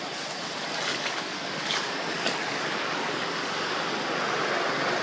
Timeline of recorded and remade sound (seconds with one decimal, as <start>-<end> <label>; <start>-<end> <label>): 0.0-0.9 recorded; 0.9-3.9 remade; 3.9-5.0 recorded